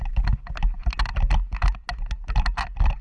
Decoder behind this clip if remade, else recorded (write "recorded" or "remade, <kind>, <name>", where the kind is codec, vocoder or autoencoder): recorded